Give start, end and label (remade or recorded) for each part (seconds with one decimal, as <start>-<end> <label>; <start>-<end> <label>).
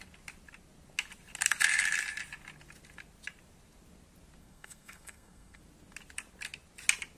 0.0-4.4 recorded; 4.4-5.6 remade; 5.6-7.2 recorded